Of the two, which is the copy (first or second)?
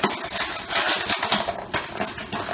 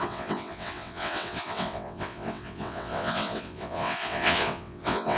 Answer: second